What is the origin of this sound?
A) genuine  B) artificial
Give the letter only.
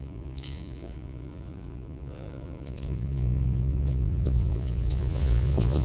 B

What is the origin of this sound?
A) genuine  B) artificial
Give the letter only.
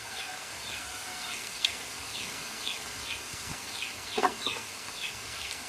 B